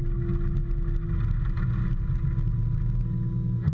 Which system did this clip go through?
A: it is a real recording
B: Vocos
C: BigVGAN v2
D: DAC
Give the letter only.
A